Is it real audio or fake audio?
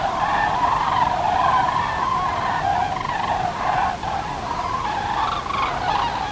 real